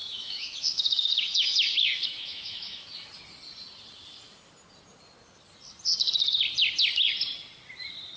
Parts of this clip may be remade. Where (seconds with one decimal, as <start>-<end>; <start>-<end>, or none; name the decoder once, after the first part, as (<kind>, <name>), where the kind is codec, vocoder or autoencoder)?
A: 0.0-2.9 (autoencoder, DAC-VAE)